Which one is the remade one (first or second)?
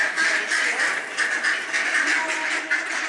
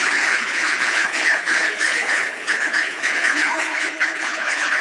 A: second